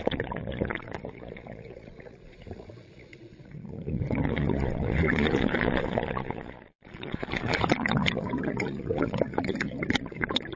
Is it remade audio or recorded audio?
remade